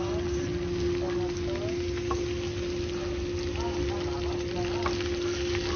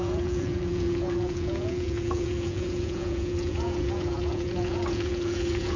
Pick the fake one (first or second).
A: second